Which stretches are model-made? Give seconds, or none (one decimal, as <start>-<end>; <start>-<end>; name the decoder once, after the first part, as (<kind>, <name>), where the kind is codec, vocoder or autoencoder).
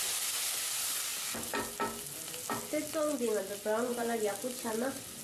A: 3.9-4.7 (vocoder, BigVGAN v2)